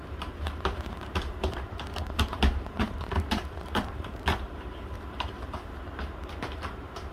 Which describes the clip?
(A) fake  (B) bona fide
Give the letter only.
A